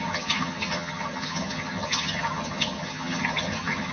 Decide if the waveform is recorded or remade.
remade